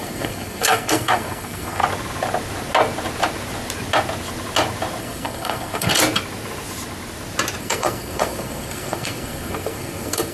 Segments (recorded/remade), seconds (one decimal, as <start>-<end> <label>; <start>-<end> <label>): 0.0-1.8 remade; 1.8-5.0 recorded; 5.0-5.9 remade; 5.9-7.6 recorded; 7.6-10.3 remade